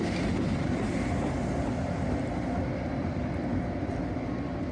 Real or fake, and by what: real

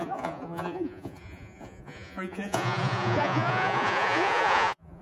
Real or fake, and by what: fake, vocoder, Vocos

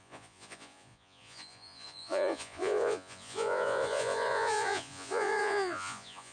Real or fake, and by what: fake, vocoder, Vocos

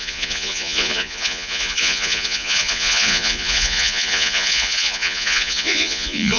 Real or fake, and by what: fake, vocoder, Vocos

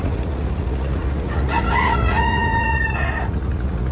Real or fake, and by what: fake, vocoder, Vocos